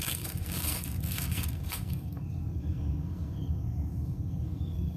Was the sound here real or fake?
fake